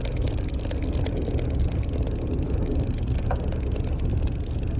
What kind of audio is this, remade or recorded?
recorded